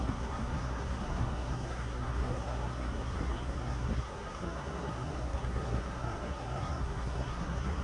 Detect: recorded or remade remade